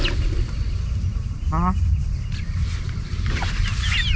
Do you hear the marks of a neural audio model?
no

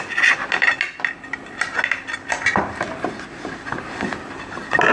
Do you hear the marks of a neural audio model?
no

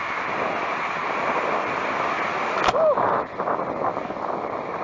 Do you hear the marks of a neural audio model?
no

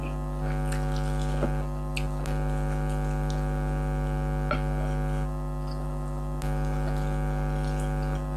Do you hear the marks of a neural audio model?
no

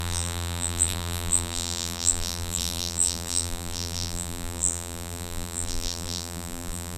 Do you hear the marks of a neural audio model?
yes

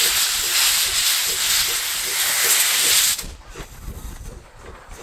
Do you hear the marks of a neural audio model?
yes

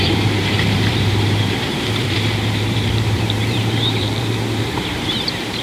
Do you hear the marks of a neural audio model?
yes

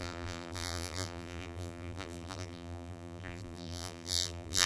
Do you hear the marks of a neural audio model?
yes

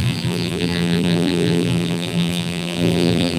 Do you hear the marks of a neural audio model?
yes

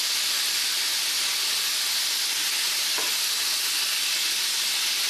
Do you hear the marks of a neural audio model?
no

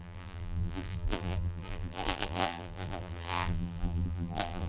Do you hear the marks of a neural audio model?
yes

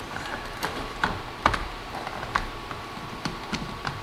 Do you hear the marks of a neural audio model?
yes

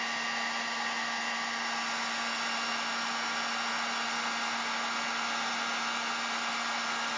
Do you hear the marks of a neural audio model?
no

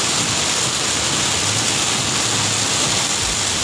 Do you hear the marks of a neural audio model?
no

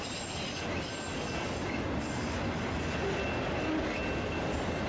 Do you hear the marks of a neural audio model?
no